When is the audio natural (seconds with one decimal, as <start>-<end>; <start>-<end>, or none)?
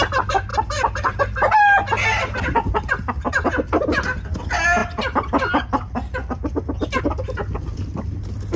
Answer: 0.0-8.6